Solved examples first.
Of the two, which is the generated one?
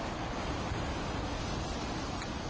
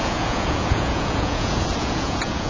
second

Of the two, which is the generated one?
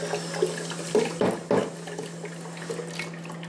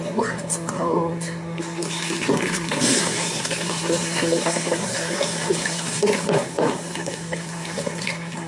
second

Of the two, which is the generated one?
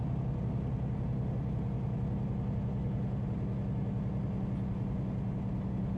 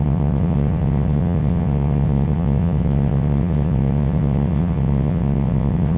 second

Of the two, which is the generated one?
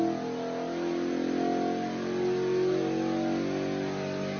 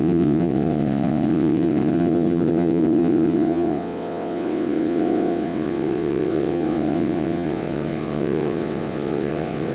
second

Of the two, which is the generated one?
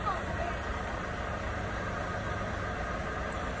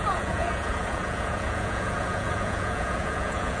second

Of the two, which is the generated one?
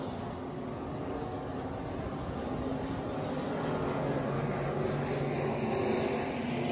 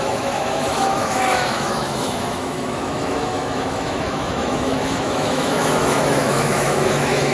second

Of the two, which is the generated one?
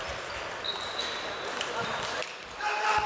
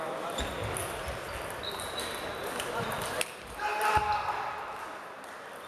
first